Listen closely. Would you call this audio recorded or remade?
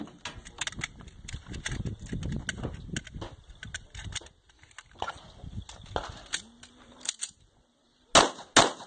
recorded